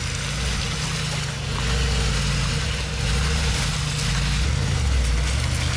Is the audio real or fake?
real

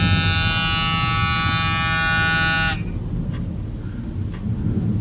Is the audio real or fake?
real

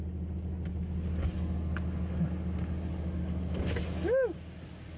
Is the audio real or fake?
real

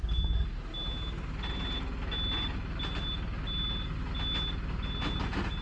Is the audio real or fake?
real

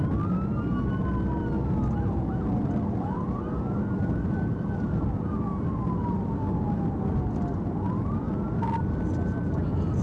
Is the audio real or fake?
real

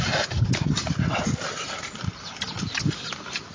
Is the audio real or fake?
real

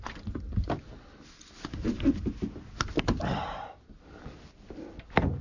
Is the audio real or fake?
real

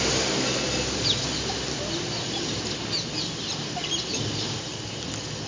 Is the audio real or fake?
real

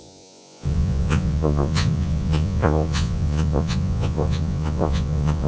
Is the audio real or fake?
fake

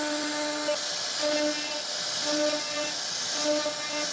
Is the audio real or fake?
real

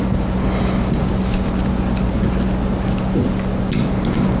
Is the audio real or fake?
real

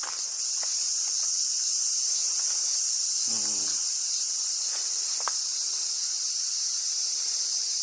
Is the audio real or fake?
real